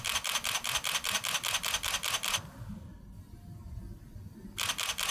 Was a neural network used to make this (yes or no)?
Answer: no